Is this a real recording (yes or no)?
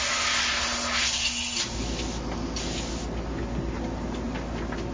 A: yes